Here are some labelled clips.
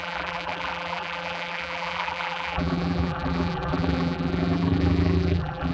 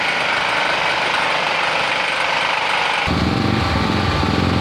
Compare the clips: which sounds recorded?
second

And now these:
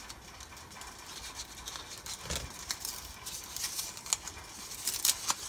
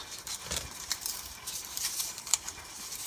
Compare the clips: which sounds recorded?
first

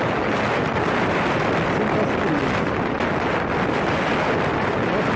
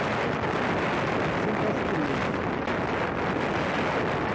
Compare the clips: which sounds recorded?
second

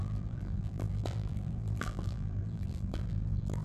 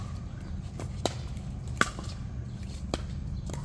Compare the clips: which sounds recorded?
second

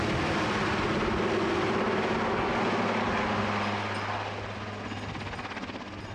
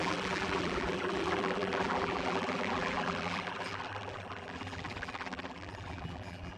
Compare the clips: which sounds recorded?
first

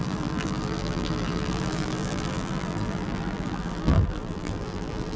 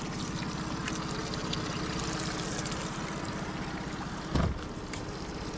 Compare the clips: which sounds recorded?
second